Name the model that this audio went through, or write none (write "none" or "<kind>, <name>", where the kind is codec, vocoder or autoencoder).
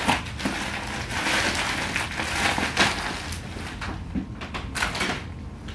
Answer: none